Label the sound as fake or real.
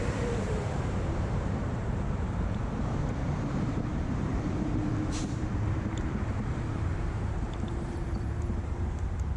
fake